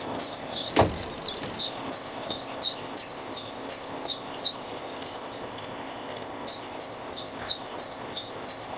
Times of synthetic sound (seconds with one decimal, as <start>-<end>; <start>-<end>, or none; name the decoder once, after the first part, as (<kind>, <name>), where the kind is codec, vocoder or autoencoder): 0.0-0.7 (codec, ZipCodec); 1.6-8.8